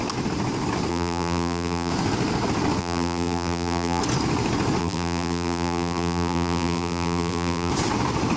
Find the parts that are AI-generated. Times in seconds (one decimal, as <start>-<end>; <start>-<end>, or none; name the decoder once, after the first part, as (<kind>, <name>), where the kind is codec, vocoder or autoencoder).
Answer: 0.9-1.9 (vocoder, BigVGAN v2); 2.8-4.0; 4.8-7.7